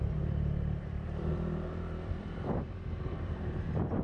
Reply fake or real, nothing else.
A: fake